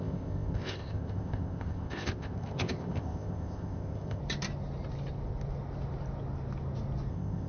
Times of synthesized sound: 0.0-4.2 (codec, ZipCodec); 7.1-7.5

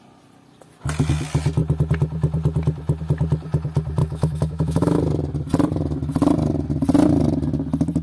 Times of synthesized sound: 4.0-5.0 (autoencoder, DAC-VAE)

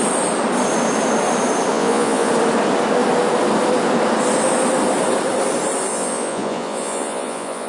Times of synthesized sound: 1.7-2.3 (vocoder, Vocos); 5.9-7.7